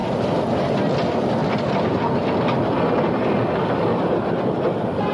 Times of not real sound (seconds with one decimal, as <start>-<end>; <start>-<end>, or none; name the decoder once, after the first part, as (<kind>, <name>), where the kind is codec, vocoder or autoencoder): 0.0-0.5 (vocoder, BigVGAN v2); 1.4-1.9